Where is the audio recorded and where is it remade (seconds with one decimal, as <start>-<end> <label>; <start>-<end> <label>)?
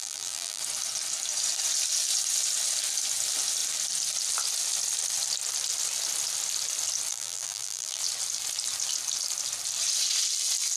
0.0-0.6 remade; 0.6-7.1 recorded; 7.1-8.0 remade; 8.0-10.8 recorded